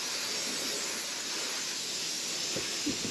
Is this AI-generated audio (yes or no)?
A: no